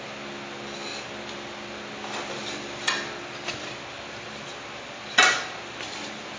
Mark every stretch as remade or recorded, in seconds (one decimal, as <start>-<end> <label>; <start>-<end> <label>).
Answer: 0.0-6.4 recorded